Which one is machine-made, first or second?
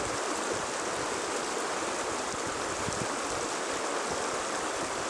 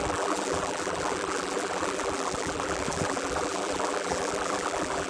second